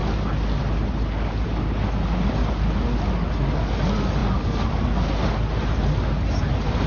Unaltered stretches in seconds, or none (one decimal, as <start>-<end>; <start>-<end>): 0.0-6.9